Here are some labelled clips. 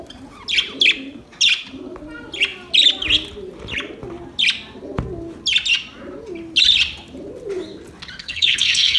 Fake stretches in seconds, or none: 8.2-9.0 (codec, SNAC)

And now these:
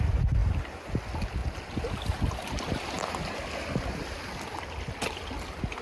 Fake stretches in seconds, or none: 0.4-0.9 (vocoder, BigVGAN v2)

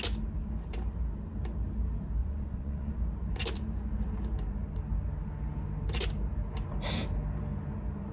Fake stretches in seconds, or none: 2.2-3.0 (vocoder, Vocos)

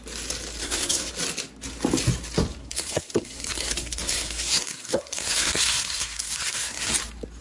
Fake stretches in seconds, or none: 0.6-1.1 (codec, SNAC); 2.6-6.9

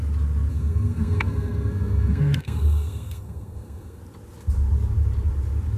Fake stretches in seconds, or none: 0.5-4.0 (codec, SNAC)